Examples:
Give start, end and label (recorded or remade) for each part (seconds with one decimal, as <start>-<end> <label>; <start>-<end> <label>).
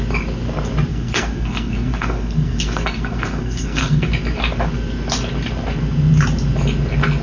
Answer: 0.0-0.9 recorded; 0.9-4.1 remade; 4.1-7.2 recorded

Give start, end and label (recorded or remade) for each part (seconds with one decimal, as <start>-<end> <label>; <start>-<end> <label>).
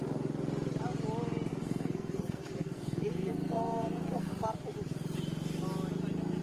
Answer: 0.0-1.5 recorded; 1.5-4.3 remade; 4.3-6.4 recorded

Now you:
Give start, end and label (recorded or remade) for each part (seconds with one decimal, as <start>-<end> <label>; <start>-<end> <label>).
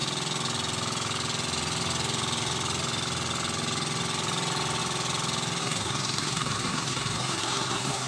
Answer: 0.0-5.6 recorded; 5.6-8.1 remade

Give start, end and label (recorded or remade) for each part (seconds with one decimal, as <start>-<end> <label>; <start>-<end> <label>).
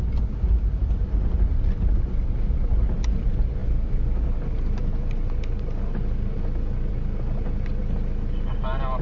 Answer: 0.0-9.0 recorded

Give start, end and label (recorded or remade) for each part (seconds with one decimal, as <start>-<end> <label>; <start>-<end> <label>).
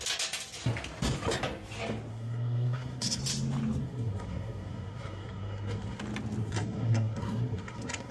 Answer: 0.0-2.1 recorded; 2.1-3.2 remade; 3.2-3.8 recorded; 3.8-6.0 remade; 6.0-6.4 recorded; 6.4-8.1 remade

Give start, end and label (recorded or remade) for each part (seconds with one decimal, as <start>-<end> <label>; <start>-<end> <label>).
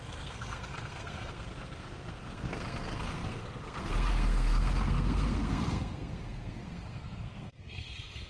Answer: 0.0-8.3 remade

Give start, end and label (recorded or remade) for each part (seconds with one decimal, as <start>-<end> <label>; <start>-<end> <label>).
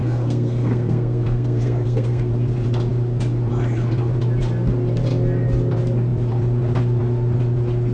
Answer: 0.0-2.3 remade; 2.3-7.9 recorded